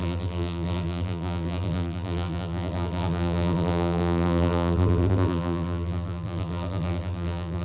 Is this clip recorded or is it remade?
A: remade